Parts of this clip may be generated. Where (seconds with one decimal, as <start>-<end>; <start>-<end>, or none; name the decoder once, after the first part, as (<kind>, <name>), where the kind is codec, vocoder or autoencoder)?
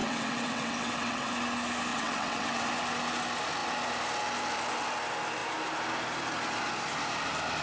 0.0-1.3 (vocoder, WaveNeXt); 1.9-2.7